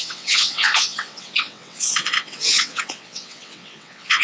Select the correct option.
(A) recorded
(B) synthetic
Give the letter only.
B